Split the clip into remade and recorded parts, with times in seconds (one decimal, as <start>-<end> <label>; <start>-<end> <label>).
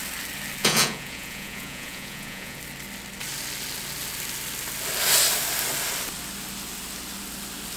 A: 0.0-0.6 recorded; 0.6-2.6 remade; 2.6-7.8 recorded